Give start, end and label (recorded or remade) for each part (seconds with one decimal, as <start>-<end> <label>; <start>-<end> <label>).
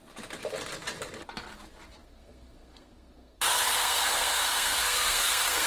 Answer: 0.0-2.0 recorded; 2.0-5.7 remade